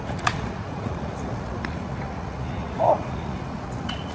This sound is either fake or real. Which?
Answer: fake